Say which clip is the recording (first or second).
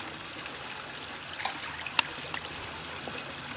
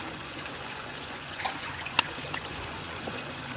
first